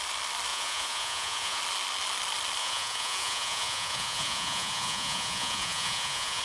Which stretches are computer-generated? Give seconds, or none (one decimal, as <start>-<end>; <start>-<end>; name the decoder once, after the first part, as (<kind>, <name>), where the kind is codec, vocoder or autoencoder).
0.5-1.6 (vocoder, Vocos); 2.6-6.4